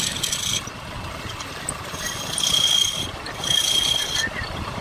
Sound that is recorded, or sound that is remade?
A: recorded